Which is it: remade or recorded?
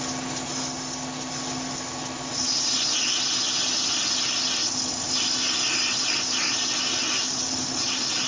recorded